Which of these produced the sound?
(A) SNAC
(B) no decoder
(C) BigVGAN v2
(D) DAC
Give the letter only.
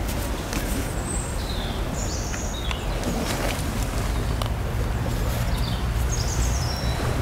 B